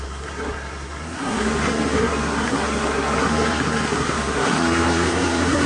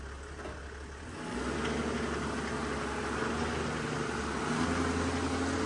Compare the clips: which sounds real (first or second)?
second